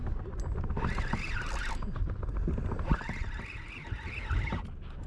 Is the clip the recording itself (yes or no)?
yes